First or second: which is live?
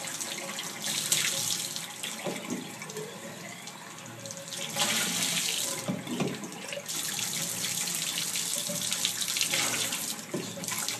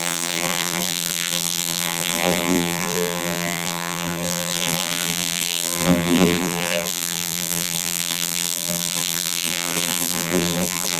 first